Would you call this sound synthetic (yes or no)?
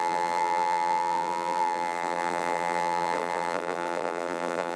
yes